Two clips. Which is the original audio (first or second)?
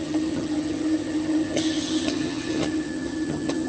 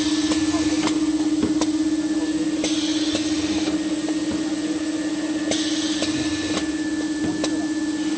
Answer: second